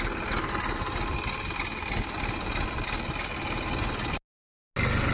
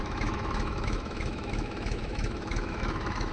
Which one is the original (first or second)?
first